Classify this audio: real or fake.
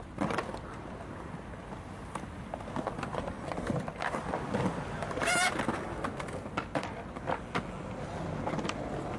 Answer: real